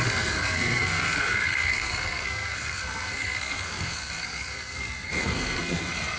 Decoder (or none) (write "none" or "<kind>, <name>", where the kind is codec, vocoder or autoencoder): codec, SNAC